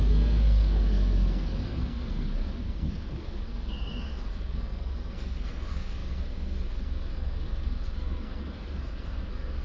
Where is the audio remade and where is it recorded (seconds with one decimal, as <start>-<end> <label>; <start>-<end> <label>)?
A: 0.0-9.6 remade